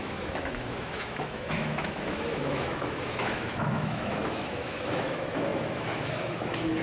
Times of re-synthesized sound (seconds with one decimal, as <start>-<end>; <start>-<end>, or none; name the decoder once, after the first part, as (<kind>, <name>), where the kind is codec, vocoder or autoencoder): 0.0-6.8 (autoencoder, DAC-VAE)